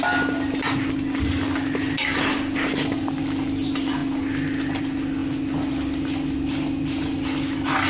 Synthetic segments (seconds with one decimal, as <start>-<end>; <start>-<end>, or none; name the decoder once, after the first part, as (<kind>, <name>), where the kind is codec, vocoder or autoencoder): none